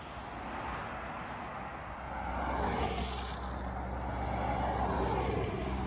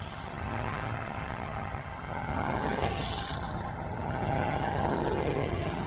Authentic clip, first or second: first